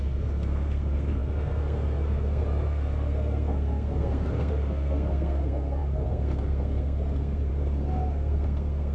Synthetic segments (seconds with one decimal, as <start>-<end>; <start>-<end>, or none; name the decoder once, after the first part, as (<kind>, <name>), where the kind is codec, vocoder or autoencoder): 0.0-8.9 (codec, SNAC)